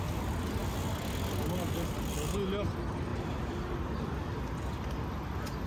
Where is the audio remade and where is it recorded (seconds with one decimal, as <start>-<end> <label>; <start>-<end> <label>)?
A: 0.0-5.7 recorded